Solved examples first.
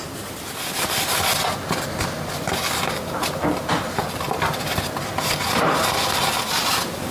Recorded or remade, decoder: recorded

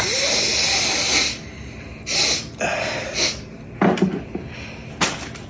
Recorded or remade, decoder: recorded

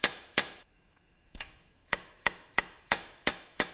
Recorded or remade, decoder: remade, autoencoder, DAC-VAE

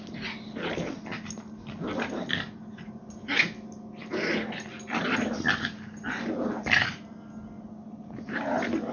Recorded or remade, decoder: recorded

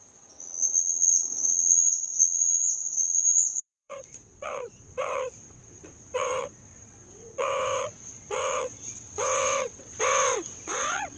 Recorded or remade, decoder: remade, vocoder, WaveNeXt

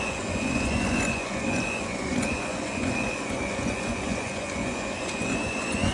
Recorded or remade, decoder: remade, vocoder, Vocos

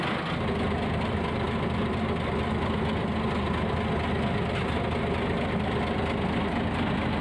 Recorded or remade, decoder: recorded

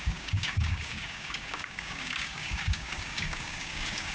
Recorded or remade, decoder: remade, codec, DAC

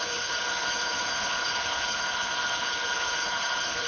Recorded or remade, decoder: remade, codec, HILCodec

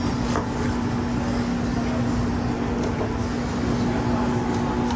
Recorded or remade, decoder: recorded